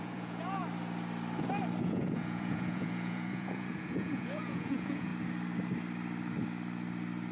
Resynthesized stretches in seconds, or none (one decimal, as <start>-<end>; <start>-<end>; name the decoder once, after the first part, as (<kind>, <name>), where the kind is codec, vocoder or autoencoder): 0.0-0.6 (vocoder, Vocos); 1.8-5.1